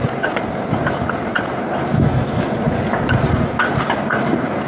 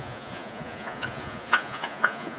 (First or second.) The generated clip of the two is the second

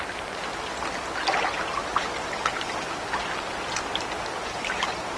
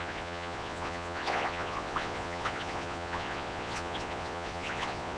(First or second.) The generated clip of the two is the second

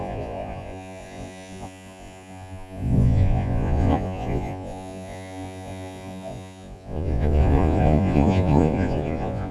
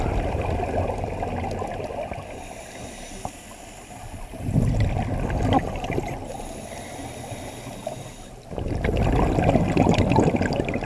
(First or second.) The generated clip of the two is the first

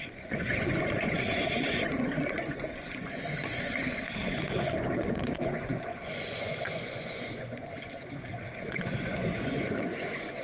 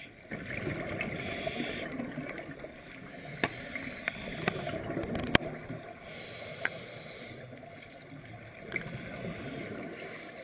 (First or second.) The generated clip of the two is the first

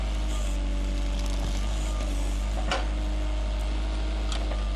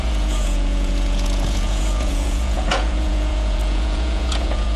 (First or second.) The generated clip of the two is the second